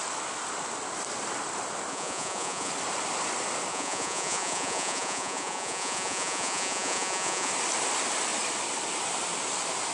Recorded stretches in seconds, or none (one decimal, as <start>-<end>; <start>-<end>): 0.0-1.9; 2.7-3.7; 7.5-9.9